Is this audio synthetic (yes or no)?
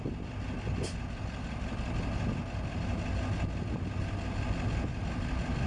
no